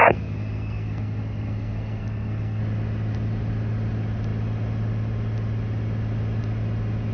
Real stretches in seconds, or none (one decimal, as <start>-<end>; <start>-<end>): 2.6-7.1